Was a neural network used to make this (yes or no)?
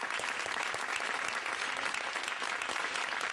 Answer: no